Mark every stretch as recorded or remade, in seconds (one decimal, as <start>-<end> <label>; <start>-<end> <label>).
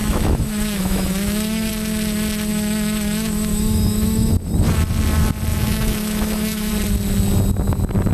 0.0-1.7 remade; 1.7-2.5 recorded; 2.5-4.3 remade; 4.3-5.5 recorded; 5.5-6.7 remade; 6.7-8.1 recorded